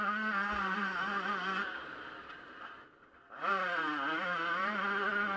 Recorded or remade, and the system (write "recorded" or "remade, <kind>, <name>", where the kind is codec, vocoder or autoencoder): recorded